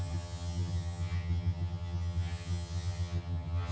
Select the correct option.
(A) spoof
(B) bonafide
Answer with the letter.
A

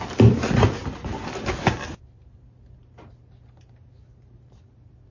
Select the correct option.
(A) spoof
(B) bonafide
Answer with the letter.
B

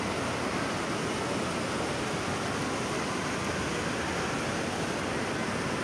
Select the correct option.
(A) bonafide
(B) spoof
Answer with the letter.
A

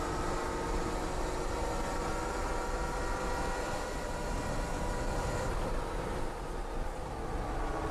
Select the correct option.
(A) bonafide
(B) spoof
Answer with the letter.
A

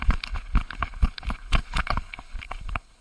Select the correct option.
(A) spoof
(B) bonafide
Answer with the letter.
A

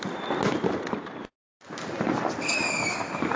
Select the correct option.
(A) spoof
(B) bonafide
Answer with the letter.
B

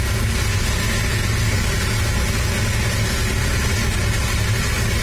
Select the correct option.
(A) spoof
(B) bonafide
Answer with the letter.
B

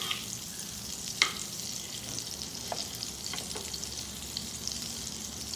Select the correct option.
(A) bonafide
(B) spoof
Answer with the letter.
A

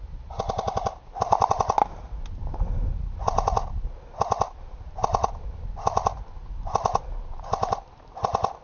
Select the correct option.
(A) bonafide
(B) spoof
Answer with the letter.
A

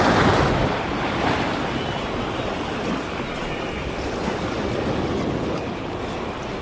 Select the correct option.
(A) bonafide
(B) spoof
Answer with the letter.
A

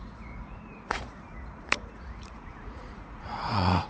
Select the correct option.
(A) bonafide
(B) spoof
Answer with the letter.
B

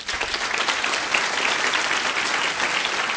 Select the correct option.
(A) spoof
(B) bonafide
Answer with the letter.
B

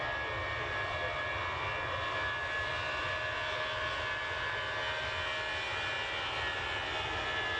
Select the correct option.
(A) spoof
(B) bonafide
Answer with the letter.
B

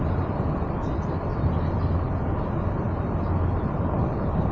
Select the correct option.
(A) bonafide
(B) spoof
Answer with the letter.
A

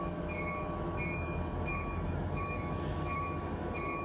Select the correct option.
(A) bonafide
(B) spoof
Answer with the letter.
B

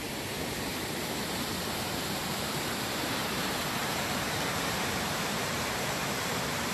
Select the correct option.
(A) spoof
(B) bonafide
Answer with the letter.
A